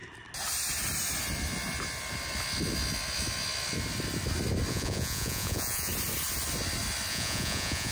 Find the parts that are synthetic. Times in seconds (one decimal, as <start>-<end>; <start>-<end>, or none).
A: 4.7-5.9; 7.1-7.9